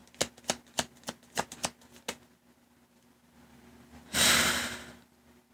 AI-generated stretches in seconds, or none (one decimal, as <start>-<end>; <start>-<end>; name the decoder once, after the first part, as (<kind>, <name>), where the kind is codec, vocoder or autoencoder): none